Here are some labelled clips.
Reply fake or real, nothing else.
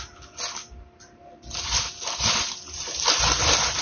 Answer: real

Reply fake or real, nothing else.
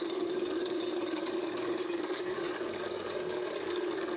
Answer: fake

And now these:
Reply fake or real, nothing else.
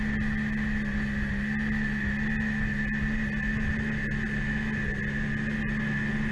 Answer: real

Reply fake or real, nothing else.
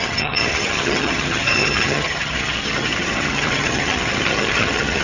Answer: fake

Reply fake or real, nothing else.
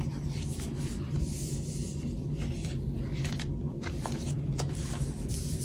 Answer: fake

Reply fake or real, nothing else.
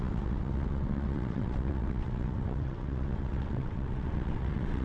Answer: fake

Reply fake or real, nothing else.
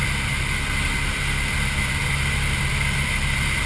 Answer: fake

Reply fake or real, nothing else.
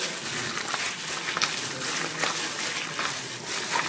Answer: real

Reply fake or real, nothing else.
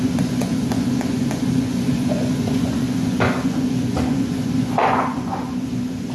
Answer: fake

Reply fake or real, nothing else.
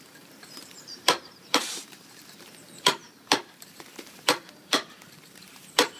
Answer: fake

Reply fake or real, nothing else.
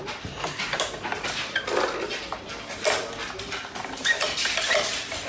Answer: real